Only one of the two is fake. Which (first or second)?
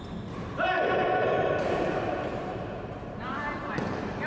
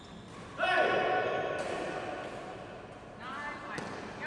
first